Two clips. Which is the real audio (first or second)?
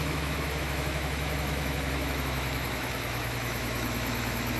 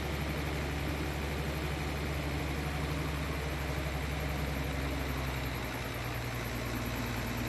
second